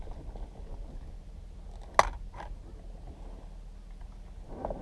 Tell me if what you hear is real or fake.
real